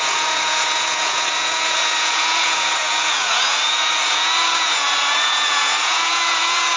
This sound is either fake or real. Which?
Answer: fake